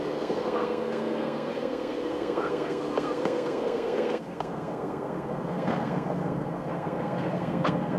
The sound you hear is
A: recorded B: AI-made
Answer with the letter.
B